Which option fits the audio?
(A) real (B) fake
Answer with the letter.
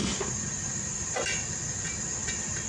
A